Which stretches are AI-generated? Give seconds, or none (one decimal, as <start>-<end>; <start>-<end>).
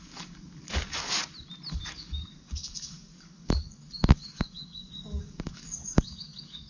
0.0-1.2; 1.7-6.7